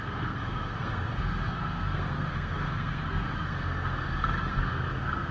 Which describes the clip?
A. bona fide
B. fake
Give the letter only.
B